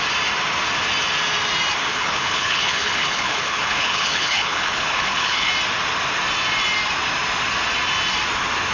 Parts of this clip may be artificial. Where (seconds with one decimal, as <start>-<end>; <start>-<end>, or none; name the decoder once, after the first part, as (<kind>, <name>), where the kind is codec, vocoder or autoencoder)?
1.9-5.5 (codec, HILCodec)